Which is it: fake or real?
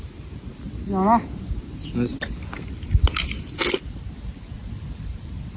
real